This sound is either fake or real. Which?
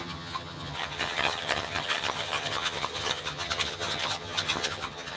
fake